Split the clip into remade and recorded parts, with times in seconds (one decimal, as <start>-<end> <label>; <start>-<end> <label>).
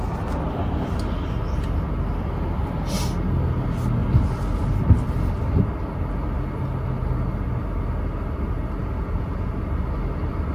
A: 0.0-8.8 recorded; 8.8-9.5 remade; 9.5-10.5 recorded